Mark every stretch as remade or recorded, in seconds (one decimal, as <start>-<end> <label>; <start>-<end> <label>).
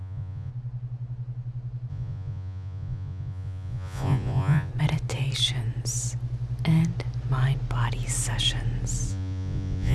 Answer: 0.0-0.5 remade; 0.5-1.9 recorded; 1.9-4.7 remade; 4.7-9.1 recorded; 9.1-9.9 remade